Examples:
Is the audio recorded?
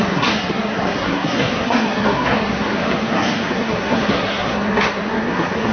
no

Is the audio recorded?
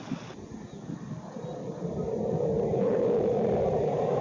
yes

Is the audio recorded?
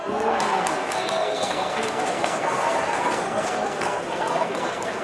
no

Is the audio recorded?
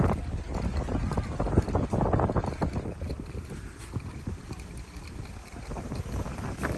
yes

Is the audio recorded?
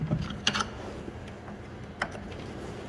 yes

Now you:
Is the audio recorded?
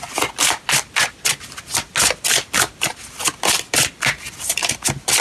yes